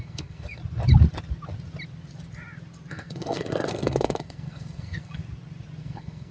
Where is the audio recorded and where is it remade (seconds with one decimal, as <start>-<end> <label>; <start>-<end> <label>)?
0.0-0.6 remade; 0.6-2.9 recorded; 2.9-5.2 remade; 5.2-5.8 recorded; 5.8-6.3 remade